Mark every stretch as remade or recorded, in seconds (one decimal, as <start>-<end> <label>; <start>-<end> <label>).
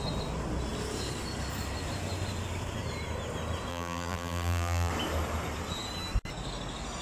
0.0-3.7 recorded; 3.7-4.9 remade; 4.9-7.0 recorded